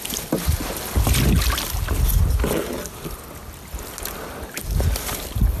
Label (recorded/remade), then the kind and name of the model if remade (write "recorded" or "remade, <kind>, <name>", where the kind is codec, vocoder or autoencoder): recorded